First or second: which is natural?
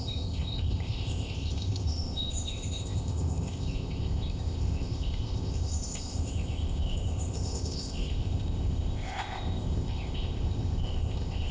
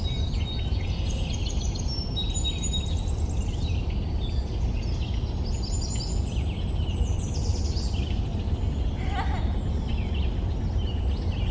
second